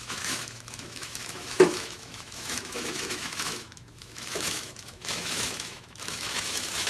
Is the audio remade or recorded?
remade